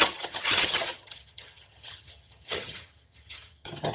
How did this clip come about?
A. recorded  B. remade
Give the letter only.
B